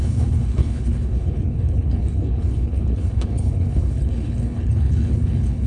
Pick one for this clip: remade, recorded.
remade